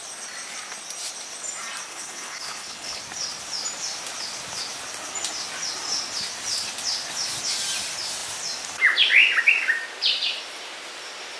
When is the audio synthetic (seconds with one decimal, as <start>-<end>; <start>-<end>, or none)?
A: 1.9-3.0